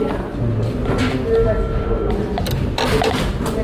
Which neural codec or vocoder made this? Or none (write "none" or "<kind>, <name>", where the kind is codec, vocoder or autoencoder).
none